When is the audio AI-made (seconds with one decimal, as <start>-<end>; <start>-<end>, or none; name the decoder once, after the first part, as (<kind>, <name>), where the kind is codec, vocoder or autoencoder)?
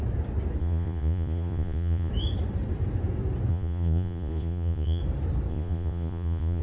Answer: 0.6-2.1 (vocoder, Vocos); 3.5-5.0; 5.5-6.6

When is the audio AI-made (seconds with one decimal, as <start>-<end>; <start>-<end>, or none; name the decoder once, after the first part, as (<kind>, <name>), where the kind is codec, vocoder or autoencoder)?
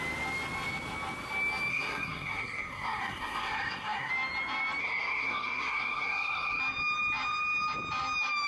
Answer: 1.7-4.1 (codec, SNAC); 4.8-6.6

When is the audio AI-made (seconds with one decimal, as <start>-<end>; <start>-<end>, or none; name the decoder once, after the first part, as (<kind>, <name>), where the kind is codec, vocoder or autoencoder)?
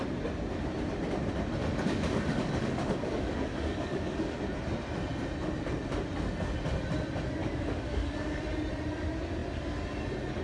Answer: 1.6-4.4 (codec, DAC); 7.4-8.4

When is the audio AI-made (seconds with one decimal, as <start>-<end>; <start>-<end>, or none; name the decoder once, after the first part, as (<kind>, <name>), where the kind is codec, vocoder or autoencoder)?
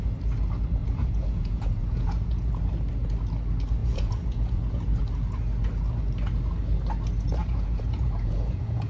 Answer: 0.8-2.5 (vocoder, Vocos); 3.8-5.0; 7.4-8.9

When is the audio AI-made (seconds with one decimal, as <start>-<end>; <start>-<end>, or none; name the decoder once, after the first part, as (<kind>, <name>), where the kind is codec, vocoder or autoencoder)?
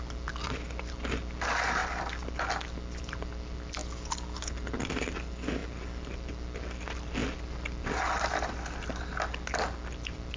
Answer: none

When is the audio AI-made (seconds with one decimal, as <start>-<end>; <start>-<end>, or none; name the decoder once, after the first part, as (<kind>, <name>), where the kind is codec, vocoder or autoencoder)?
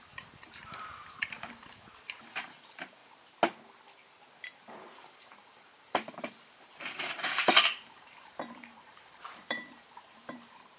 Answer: 0.0-3.0 (vocoder, BigVGAN v2); 4.4-10.8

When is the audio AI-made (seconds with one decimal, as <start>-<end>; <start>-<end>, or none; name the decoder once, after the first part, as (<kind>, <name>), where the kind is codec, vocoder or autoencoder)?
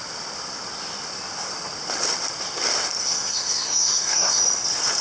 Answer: 3.0-4.4 (codec, SNAC)